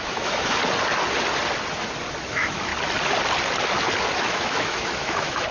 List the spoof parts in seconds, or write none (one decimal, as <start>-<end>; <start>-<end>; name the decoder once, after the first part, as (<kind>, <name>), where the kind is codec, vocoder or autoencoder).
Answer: 0.0-0.6 (autoencoder, DAC-VAE); 2.3-2.7; 4.2-5.5